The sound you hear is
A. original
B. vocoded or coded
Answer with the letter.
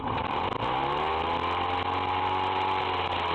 A